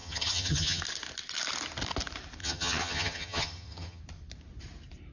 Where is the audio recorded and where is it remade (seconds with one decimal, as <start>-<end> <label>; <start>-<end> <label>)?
0.0-0.8 remade; 0.8-2.4 recorded; 2.4-4.0 remade; 4.0-5.1 recorded